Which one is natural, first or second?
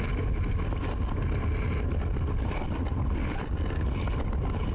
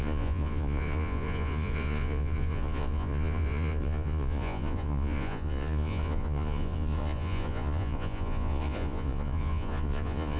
first